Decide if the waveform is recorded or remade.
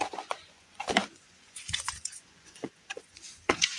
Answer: remade